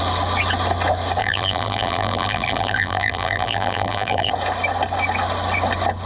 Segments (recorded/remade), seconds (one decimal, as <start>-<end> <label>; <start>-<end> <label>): 0.0-1.2 recorded; 1.2-4.3 remade; 4.3-6.1 recorded